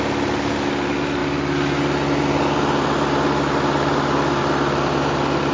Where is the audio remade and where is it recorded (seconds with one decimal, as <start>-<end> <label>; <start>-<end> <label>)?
0.0-5.5 recorded